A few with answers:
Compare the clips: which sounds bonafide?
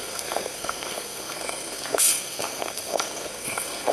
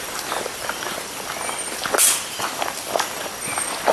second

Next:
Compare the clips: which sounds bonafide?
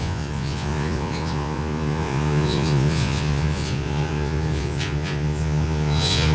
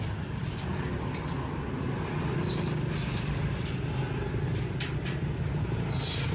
second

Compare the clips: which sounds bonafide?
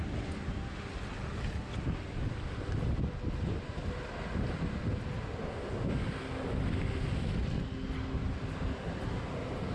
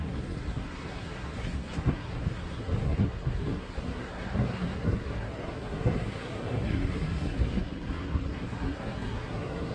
first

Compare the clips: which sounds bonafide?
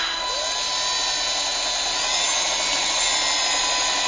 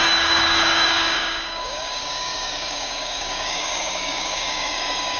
first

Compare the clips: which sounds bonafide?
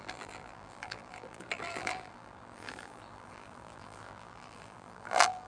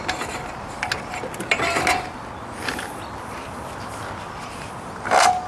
second